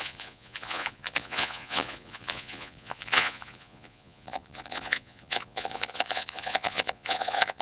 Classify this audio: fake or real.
fake